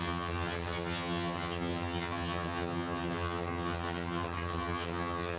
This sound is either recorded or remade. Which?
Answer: remade